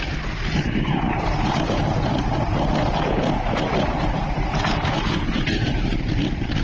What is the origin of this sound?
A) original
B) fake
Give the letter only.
A